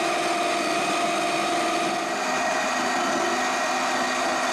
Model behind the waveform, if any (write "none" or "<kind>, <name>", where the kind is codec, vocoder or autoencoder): none